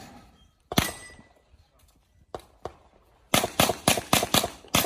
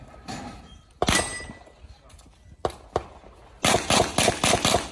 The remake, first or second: first